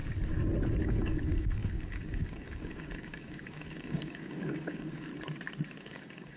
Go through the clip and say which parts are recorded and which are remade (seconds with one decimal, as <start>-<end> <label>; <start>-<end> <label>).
0.0-0.8 recorded; 0.8-5.1 remade; 5.1-5.8 recorded; 5.8-6.4 remade